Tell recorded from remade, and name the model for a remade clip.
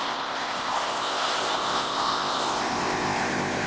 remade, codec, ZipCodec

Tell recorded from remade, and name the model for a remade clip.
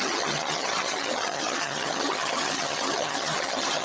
remade, vocoder, HiFi-GAN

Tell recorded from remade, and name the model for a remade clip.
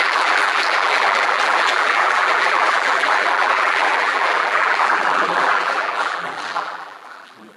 remade, vocoder, BigVGAN v2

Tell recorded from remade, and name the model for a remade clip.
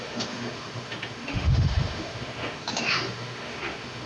remade, autoencoder, DAC-VAE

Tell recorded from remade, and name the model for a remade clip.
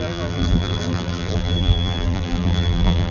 remade, vocoder, BigVGAN v2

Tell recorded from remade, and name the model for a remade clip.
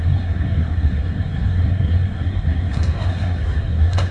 remade, codec, SNAC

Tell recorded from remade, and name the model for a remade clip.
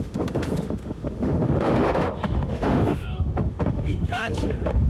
remade, autoencoder, DAC-VAE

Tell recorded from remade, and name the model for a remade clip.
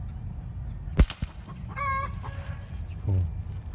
recorded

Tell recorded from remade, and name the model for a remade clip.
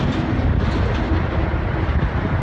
recorded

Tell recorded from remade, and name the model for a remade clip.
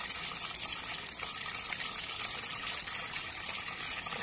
recorded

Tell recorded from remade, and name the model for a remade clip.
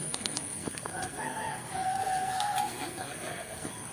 remade, codec, SNAC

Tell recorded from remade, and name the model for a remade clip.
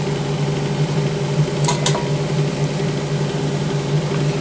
recorded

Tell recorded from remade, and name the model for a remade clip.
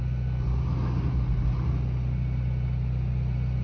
recorded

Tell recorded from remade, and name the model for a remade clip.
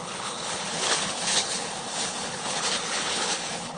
remade, codec, HILCodec